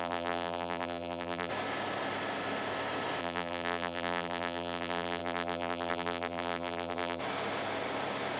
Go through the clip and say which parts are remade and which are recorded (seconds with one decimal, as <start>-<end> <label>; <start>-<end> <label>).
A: 0.0-1.5 remade; 1.5-3.2 recorded; 3.2-7.2 remade; 7.2-8.4 recorded